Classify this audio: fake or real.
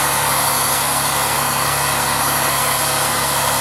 fake